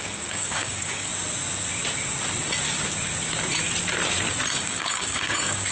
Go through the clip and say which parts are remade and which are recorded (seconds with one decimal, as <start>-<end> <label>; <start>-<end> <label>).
0.0-1.1 remade; 1.1-4.5 recorded; 4.5-5.7 remade